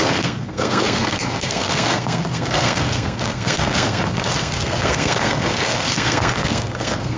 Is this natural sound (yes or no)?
no